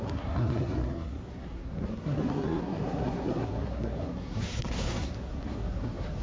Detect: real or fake fake